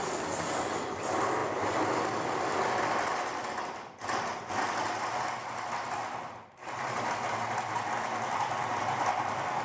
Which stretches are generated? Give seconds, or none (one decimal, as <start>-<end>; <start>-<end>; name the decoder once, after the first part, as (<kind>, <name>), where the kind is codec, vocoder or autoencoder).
none

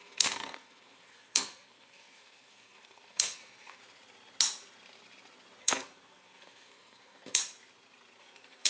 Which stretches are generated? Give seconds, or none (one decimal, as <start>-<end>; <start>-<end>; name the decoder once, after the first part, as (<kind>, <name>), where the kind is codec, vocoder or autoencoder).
0.0-3.8 (codec, SNAC); 5.6-7.4; 8.2-8.7